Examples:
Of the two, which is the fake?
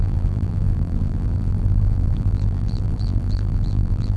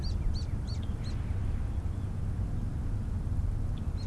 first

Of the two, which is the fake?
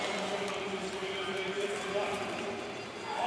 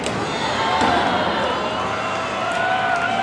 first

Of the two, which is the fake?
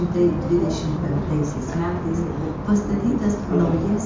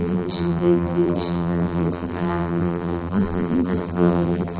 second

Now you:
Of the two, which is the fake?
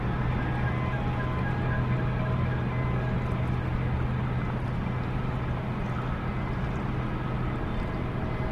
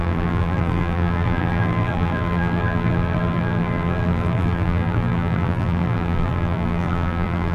second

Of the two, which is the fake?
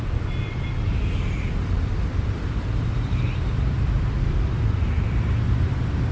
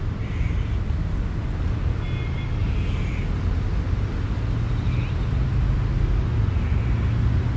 first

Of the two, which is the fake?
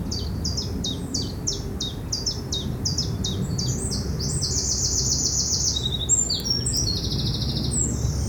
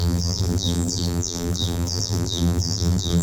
second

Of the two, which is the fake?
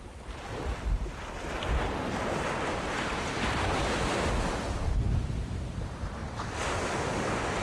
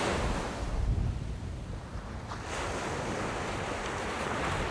first